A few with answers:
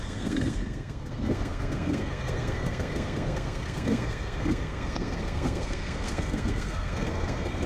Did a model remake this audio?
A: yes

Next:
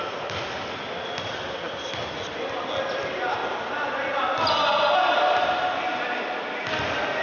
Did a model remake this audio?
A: no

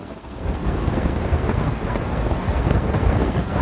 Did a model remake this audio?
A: yes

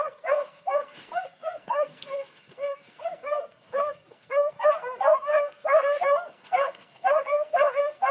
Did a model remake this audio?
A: yes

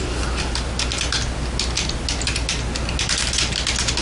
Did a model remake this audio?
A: no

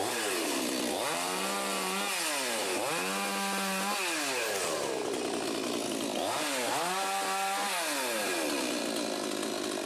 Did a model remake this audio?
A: no